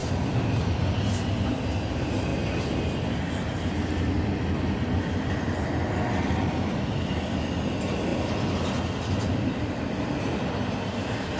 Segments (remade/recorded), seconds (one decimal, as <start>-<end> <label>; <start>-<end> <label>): 0.0-11.4 recorded